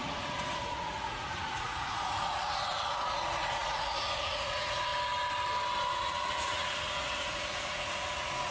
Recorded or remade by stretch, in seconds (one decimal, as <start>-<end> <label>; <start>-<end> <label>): 0.0-4.9 remade; 4.9-5.9 recorded; 5.9-8.5 remade